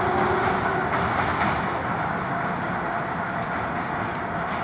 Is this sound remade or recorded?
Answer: recorded